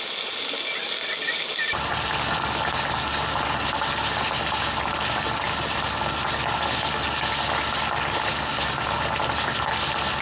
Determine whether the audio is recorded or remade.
recorded